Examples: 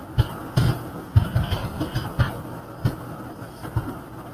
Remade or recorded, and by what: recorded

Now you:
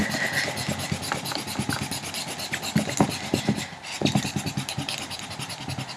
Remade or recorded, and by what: recorded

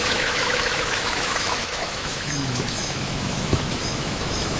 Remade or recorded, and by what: remade, autoencoder, DAC-VAE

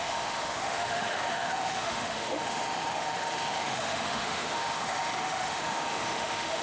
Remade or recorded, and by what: remade, autoencoder, DAC-VAE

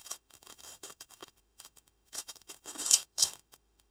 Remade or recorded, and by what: remade, autoencoder, DAC-VAE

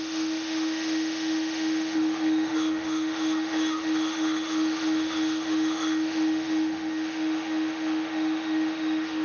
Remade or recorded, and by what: remade, autoencoder, DAC-VAE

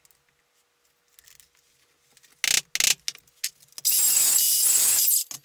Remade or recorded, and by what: recorded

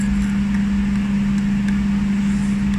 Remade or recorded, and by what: recorded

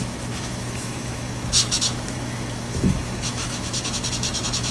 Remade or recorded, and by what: remade, autoencoder, DAC-VAE